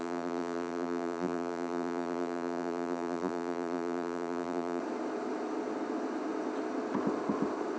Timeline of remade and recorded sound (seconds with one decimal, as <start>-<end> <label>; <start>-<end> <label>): 0.0-4.8 remade; 4.8-7.8 recorded